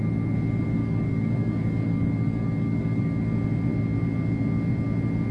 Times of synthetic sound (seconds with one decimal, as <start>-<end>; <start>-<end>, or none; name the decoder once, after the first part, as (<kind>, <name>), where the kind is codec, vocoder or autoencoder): 0.8-3.2 (codec, DAC)